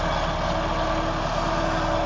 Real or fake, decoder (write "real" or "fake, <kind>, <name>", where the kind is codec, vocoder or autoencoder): real